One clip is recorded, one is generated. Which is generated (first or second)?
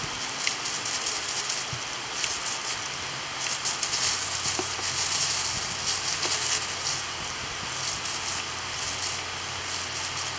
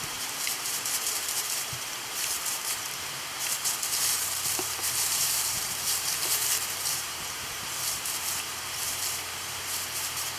second